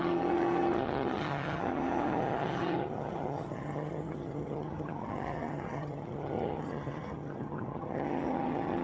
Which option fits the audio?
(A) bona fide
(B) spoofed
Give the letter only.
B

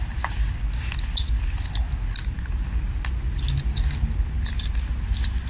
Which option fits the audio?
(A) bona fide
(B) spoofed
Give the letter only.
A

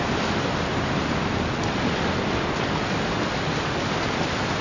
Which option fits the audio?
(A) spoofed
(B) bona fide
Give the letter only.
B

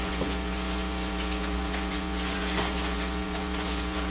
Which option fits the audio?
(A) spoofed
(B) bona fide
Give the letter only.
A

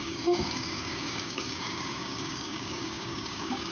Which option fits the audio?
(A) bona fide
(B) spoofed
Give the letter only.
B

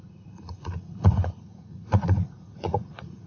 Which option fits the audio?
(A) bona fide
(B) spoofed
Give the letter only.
B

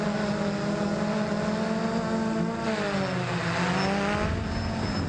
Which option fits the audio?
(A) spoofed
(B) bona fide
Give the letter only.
B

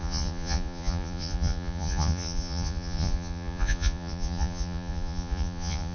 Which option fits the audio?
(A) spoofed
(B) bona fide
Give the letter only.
A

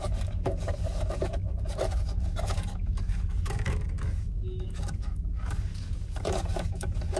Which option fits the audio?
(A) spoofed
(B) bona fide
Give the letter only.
A